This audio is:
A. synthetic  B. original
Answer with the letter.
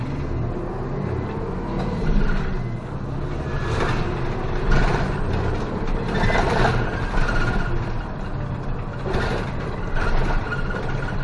B